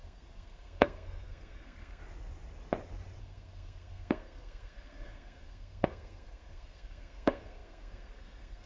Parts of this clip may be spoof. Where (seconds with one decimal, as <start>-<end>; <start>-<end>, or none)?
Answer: 0.0-2.0; 3.2-8.7